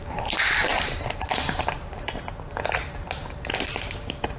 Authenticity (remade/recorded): remade